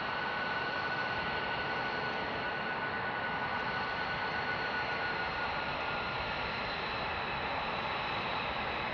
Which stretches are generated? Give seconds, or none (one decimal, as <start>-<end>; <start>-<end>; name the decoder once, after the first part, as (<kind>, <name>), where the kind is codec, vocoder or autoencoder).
none